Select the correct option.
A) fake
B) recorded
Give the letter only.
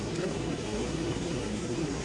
A